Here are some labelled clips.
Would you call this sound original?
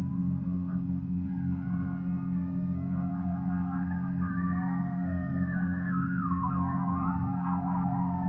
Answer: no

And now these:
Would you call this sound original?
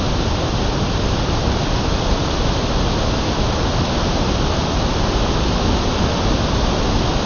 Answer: yes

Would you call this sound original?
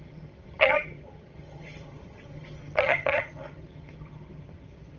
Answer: no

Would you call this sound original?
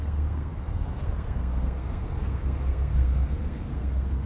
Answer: no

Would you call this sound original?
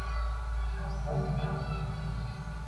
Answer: yes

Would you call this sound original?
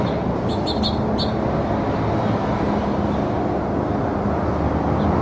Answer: yes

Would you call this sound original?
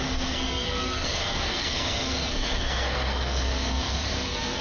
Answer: no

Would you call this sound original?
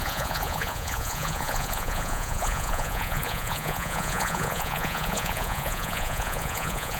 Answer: no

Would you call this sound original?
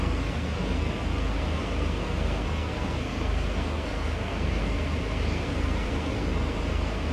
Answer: no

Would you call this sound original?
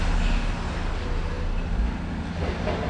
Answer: yes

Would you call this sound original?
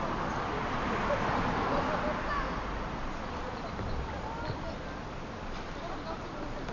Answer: yes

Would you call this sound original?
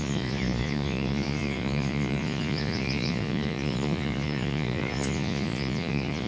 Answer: no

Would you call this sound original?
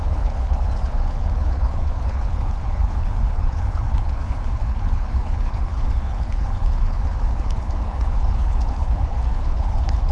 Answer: no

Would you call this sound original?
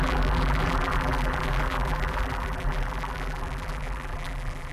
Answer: no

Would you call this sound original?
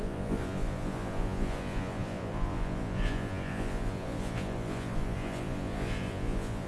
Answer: no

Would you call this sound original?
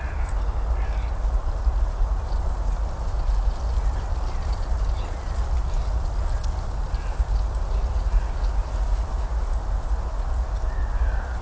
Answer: yes